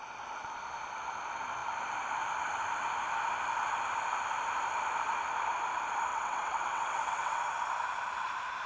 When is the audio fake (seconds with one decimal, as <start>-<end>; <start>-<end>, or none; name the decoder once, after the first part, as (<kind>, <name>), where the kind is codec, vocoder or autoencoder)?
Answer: 6.1-7.4 (vocoder, WaveNeXt)